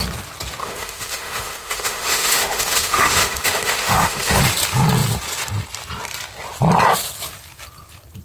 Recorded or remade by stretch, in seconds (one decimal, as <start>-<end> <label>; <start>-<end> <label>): 0.0-0.6 recorded; 0.6-4.4 remade; 4.4-8.2 recorded